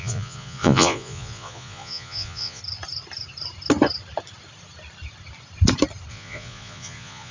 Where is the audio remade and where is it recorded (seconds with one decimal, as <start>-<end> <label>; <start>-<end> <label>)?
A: 0.0-2.6 remade; 2.6-6.1 recorded; 6.1-7.3 remade